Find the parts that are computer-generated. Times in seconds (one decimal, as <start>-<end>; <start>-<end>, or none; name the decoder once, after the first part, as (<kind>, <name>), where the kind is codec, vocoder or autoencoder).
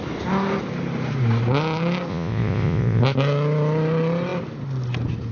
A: 2.1-3.0 (vocoder, Vocos)